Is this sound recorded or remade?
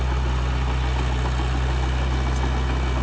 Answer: recorded